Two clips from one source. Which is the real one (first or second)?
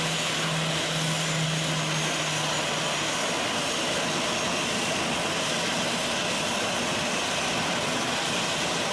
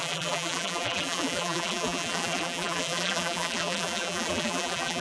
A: first